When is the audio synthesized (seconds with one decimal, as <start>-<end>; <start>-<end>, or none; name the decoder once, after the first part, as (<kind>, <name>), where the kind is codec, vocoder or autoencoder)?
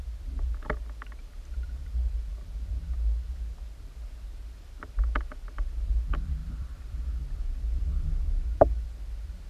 6.4-7.8 (vocoder, BigVGAN v2)